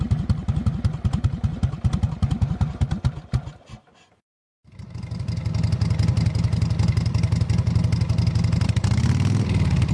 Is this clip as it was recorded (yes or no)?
yes